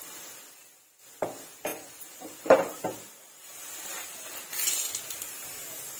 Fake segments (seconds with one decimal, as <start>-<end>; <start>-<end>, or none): 1.7-2.4

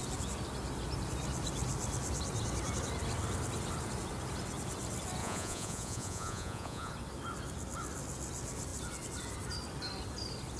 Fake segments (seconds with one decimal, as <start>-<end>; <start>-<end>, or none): 5.2-6.9

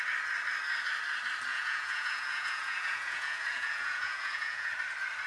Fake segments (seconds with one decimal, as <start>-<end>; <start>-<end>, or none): 1.5-4.7

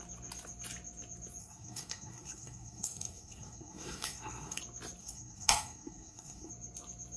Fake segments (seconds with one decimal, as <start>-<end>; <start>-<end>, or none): 1.4-4.6; 5.0-6.5

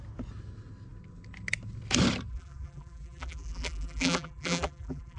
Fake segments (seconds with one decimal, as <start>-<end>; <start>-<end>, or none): 2.3-5.2

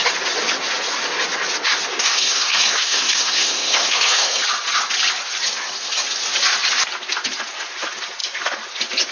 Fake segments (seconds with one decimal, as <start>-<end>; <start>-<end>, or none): 1.9-4.4

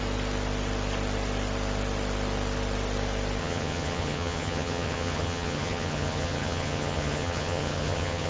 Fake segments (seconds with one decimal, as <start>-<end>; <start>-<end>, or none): 3.4-8.3

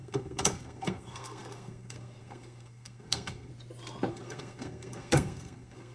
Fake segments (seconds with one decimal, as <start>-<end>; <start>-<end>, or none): 0.0-3.5; 4.1-5.9